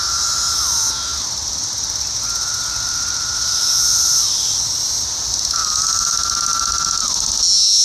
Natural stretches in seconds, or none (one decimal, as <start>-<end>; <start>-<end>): 0.0-7.8